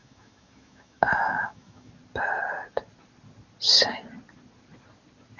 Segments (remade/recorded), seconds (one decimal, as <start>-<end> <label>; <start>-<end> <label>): 0.0-1.9 remade; 1.9-5.4 recorded

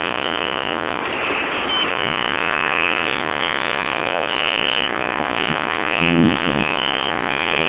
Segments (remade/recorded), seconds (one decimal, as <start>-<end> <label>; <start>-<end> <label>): 0.0-1.0 remade; 1.0-1.9 recorded; 1.9-7.7 remade

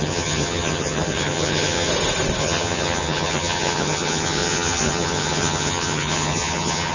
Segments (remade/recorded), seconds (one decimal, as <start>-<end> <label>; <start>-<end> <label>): 0.0-1.9 remade; 1.9-2.4 recorded; 2.4-6.9 remade

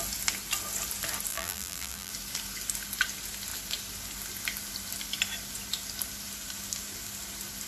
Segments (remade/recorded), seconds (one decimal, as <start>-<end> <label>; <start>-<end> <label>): 0.0-1.3 recorded; 1.3-2.1 remade; 2.1-7.7 recorded

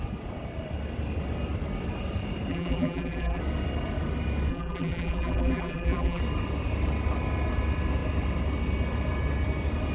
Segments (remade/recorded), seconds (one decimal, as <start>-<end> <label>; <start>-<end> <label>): 0.0-2.5 recorded; 2.5-3.4 remade; 3.4-4.5 recorded; 4.5-6.2 remade; 6.2-9.9 recorded

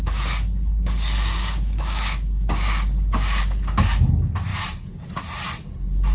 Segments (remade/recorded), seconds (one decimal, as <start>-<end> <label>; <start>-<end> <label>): 0.0-0.7 recorded; 0.7-3.4 remade; 3.4-6.1 recorded

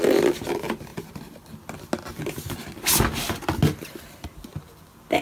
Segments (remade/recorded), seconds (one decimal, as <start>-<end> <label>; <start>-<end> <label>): 0.0-5.2 recorded